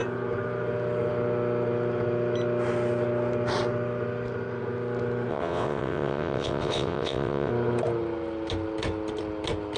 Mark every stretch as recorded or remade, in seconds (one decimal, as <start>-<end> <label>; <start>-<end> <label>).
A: 0.0-5.3 recorded; 5.3-7.5 remade; 7.5-9.8 recorded